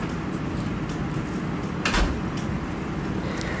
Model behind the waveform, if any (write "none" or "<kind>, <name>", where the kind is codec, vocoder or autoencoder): none